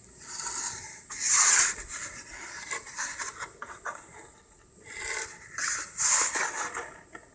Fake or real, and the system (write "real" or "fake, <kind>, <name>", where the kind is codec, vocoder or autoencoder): real